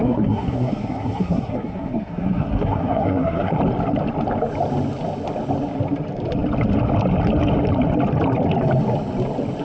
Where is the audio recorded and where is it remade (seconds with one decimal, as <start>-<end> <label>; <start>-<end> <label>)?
0.0-3.6 remade; 3.6-9.6 recorded